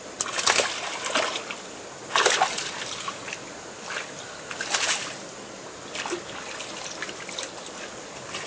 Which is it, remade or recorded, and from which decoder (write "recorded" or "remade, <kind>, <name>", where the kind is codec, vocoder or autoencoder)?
recorded